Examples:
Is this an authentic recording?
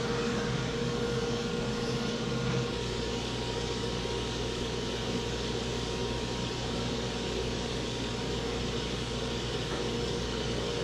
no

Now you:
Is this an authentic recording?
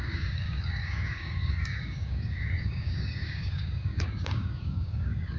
no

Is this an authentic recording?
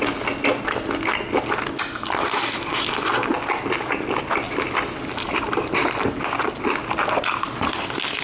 yes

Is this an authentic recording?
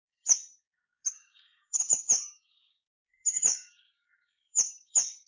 no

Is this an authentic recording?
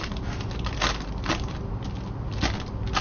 yes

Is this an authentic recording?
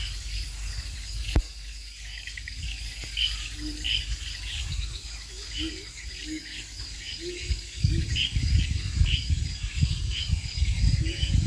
no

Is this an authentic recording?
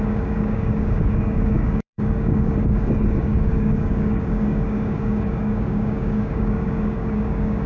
no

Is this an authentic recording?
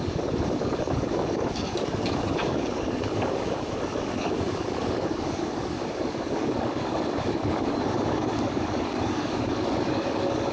no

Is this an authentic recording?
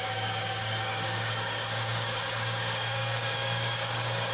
no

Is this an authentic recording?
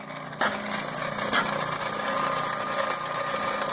yes